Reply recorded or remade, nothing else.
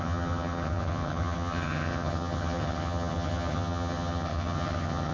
remade